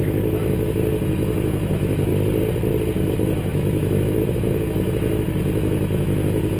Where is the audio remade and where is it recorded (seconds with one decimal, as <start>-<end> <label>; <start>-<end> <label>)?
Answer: 0.0-2.1 remade; 2.1-3.1 recorded; 3.1-6.6 remade